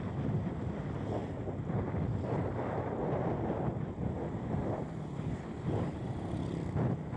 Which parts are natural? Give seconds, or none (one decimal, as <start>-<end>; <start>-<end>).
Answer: 0.0-7.2